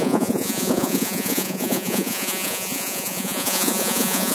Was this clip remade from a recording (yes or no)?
yes